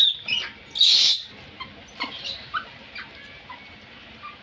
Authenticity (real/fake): real